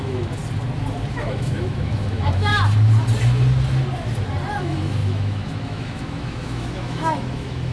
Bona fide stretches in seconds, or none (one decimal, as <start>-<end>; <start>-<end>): 0.4-1.1; 2.5-4.6